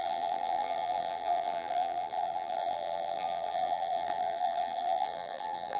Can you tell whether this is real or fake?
fake